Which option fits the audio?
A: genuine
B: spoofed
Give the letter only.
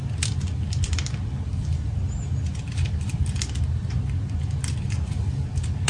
A